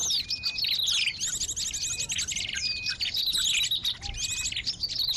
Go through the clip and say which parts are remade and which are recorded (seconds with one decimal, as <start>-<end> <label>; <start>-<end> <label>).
0.0-5.2 recorded